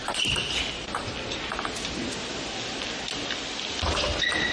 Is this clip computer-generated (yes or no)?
no